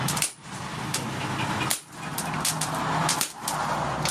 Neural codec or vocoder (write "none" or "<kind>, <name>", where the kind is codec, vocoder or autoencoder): none